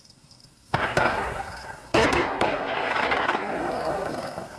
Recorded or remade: remade